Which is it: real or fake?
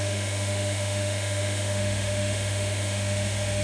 fake